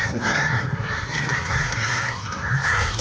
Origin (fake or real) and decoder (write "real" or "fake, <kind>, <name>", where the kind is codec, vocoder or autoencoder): fake, codec, SNAC